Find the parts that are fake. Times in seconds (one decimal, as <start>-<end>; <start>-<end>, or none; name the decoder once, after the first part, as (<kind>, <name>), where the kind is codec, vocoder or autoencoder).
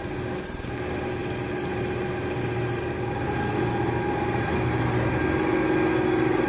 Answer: none